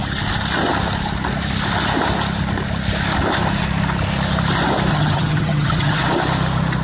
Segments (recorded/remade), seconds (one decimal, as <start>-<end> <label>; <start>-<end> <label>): 0.0-4.9 recorded; 4.9-6.0 remade; 6.0-6.8 recorded